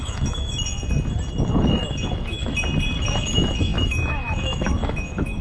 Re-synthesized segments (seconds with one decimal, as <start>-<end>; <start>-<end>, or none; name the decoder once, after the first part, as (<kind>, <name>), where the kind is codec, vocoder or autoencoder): 0.0-0.8 (autoencoder, DAC-VAE); 1.4-2.5; 3.0-5.4